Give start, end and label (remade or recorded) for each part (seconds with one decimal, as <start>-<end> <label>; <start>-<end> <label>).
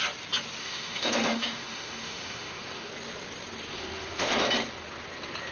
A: 0.0-0.6 recorded; 0.6-2.9 remade; 2.9-3.7 recorded; 3.7-4.3 remade; 4.3-5.5 recorded